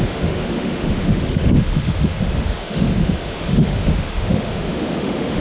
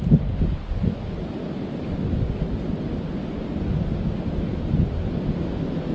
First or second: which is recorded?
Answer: second